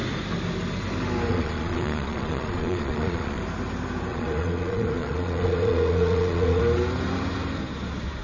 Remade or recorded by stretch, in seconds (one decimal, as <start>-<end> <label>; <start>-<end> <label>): 0.0-1.3 recorded; 1.3-3.4 remade; 3.4-4.1 recorded; 4.1-6.6 remade; 6.6-8.2 recorded